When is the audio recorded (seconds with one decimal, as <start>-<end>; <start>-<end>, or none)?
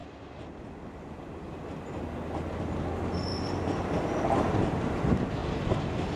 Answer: 0.0-3.3; 5.0-6.2